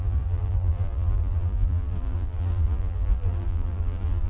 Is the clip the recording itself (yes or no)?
no